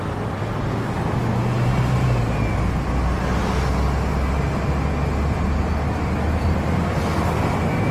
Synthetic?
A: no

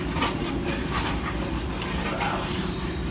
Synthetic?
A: no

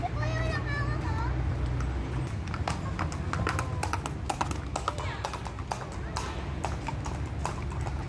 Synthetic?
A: no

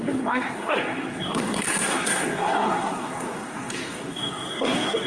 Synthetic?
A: yes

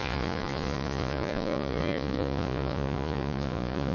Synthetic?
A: yes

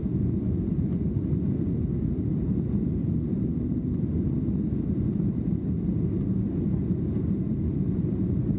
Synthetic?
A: yes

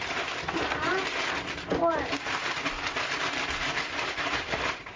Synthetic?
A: yes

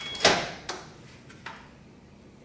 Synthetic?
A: no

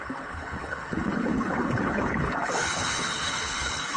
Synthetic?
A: yes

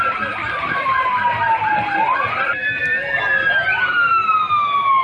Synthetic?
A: no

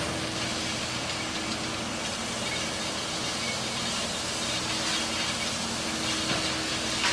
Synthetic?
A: no